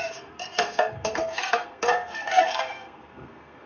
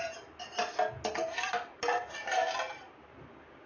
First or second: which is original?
second